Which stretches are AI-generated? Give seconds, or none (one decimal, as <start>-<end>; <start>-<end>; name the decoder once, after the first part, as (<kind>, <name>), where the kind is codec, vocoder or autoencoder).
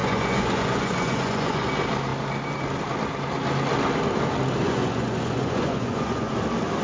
0.0-1.7 (vocoder, Vocos); 4.6-6.3